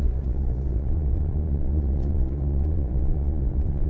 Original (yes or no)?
no